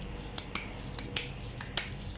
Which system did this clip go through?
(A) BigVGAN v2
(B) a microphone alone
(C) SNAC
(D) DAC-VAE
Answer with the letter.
B